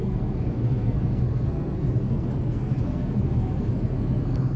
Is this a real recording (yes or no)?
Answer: no